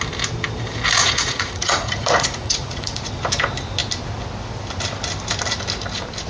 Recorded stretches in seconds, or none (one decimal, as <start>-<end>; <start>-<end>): 0.0-1.0; 3.1-6.3